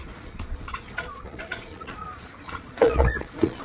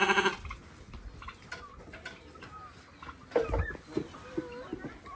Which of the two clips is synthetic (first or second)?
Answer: first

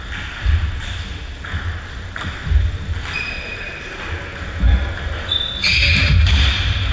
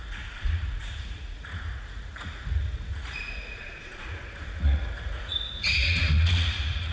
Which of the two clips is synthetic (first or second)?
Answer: second